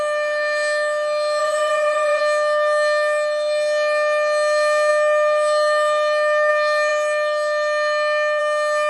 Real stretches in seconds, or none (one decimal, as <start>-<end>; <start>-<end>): 0.0-1.4; 2.2-8.9